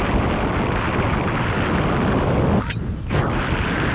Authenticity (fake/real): real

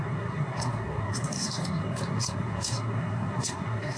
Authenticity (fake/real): fake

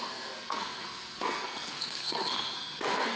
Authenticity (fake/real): fake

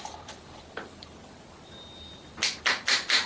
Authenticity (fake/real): real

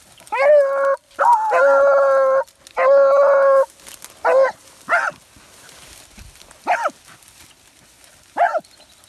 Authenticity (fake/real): real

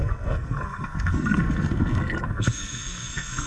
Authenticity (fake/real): fake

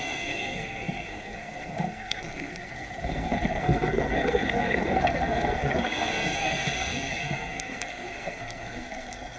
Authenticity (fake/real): fake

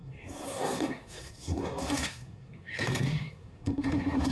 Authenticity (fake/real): fake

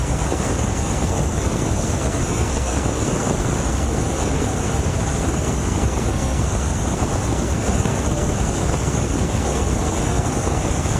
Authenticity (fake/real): fake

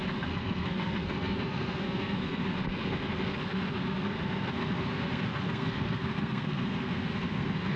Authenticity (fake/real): fake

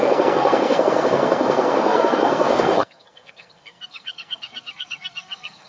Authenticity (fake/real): fake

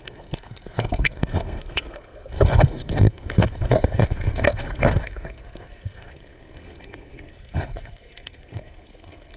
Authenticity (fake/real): fake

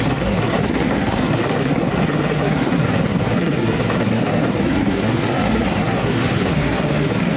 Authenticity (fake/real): fake